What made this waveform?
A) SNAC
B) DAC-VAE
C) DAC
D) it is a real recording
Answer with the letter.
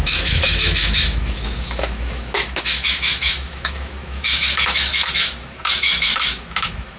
B